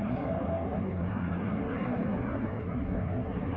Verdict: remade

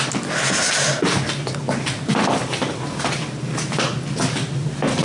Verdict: recorded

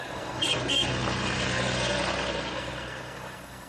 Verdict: remade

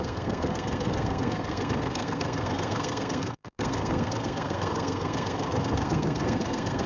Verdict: remade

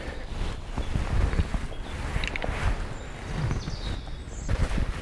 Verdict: recorded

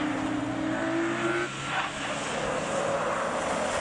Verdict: recorded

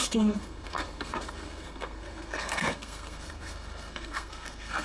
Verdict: remade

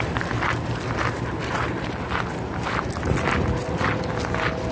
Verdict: recorded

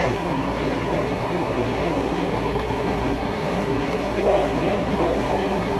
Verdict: remade